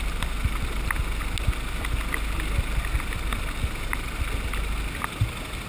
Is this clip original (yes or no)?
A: yes